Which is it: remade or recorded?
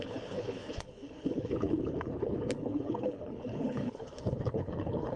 remade